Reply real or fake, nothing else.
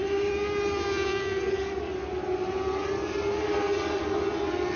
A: real